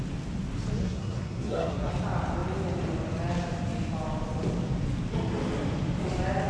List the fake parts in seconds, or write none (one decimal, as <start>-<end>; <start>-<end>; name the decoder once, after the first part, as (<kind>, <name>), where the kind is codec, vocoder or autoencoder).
0.8-1.9 (codec, SNAC)